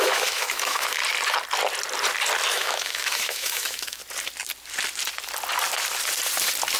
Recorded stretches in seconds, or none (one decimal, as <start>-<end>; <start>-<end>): 1.0-2.5; 4.0-6.8